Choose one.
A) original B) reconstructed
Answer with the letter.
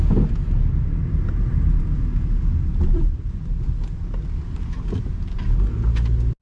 A